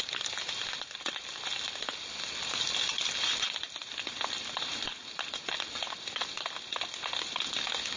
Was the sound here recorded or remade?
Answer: recorded